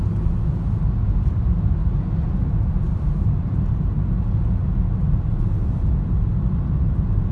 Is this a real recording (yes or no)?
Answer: yes